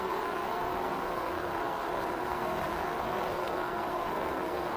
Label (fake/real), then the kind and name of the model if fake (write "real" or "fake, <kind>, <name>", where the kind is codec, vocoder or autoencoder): fake, codec, SNAC